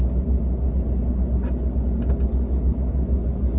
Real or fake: real